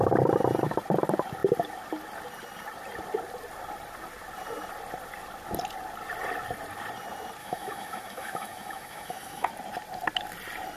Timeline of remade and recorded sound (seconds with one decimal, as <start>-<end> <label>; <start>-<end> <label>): 0.0-7.4 recorded; 7.4-9.5 remade; 9.5-10.8 recorded

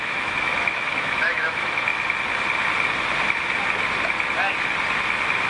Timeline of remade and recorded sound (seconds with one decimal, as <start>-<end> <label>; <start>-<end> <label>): 0.0-1.9 remade; 1.9-5.5 recorded

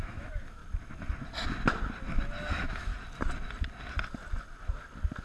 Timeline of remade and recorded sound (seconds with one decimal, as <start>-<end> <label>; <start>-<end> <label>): 0.0-0.6 remade; 0.6-2.5 recorded; 2.5-2.9 remade; 2.9-5.2 recorded